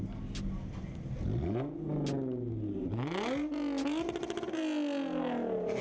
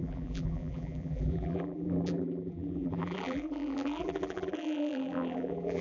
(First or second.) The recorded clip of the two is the first